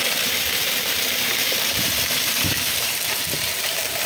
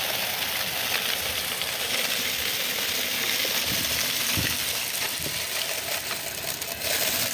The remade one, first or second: first